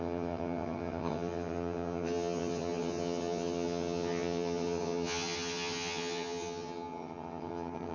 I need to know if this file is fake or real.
fake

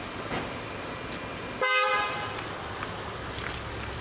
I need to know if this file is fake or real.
real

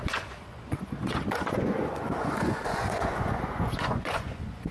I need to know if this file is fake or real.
fake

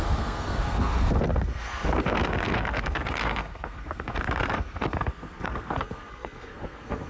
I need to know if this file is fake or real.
fake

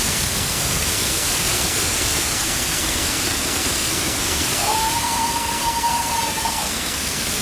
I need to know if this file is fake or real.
fake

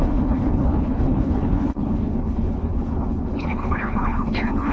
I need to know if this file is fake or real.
fake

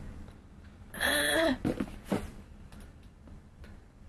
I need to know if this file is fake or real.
fake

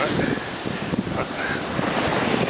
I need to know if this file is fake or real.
real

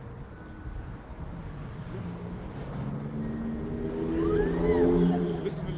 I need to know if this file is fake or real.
real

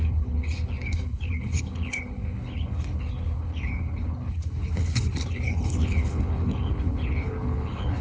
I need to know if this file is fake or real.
fake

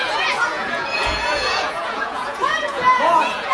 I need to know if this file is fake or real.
fake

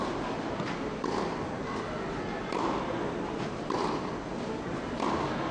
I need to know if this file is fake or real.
real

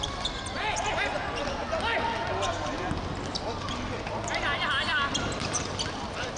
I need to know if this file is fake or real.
real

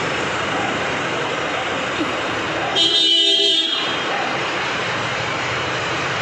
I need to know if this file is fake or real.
fake